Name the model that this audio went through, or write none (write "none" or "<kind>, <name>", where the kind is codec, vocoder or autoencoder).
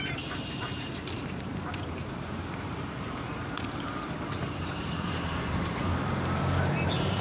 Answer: vocoder, BigVGAN v2